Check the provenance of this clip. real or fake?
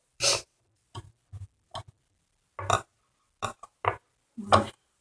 real